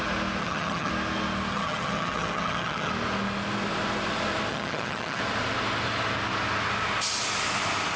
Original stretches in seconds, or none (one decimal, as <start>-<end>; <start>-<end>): 0.0-0.4; 0.9-1.5; 2.9-4.5; 5.2-8.0